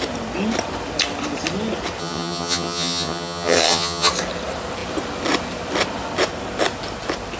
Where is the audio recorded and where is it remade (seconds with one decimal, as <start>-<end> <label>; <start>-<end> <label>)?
0.0-2.0 recorded; 2.0-4.1 remade; 4.1-7.4 recorded

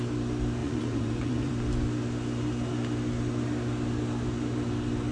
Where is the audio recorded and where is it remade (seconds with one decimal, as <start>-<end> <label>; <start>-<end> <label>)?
0.0-0.6 recorded; 0.6-1.5 remade; 1.5-5.1 recorded

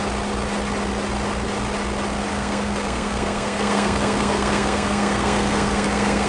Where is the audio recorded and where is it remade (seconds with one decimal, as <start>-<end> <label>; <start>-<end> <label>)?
0.0-2.3 recorded; 2.3-6.3 remade

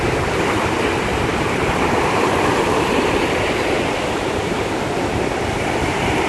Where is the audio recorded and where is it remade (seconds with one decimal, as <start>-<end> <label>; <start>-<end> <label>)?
0.0-1.3 recorded; 1.3-4.7 remade; 4.7-6.3 recorded

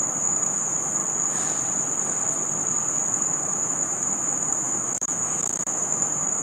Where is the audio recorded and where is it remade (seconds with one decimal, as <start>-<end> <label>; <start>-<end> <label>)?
0.0-1.0 remade; 1.0-3.1 recorded; 3.1-6.4 remade

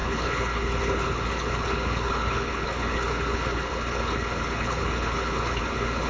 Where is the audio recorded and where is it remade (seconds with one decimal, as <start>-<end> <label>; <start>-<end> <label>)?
0.0-6.1 remade

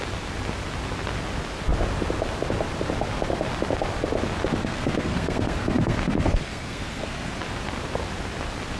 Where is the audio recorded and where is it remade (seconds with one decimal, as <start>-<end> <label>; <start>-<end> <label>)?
0.0-4.6 recorded; 4.6-7.3 remade; 7.3-8.8 recorded